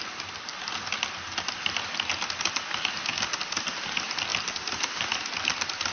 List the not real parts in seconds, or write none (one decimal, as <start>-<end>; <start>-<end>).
none